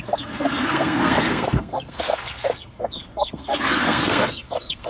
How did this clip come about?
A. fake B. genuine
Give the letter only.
A